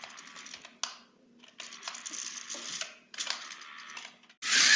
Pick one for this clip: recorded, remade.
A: recorded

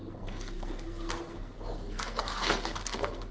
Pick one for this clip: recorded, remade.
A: remade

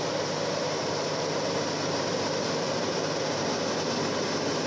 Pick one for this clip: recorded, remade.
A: recorded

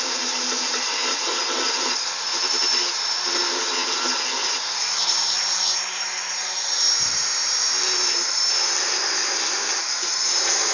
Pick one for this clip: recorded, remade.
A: remade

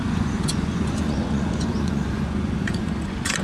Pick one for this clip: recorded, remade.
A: remade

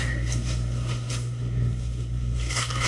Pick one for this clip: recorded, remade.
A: remade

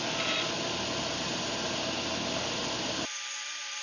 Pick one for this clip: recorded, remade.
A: recorded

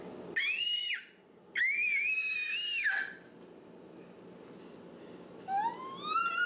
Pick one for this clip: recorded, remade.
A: recorded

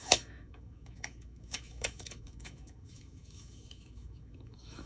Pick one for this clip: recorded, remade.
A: remade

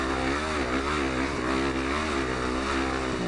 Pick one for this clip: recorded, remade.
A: recorded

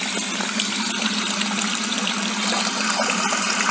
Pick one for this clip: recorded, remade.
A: recorded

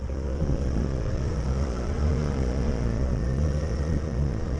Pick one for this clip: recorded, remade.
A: remade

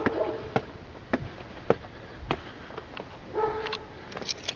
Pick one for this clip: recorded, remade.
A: recorded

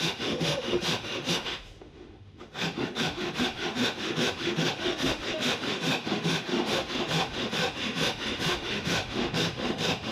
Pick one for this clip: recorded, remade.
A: remade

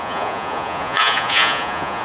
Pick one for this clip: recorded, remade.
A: remade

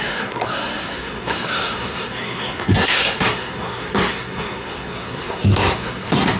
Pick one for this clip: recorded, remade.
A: remade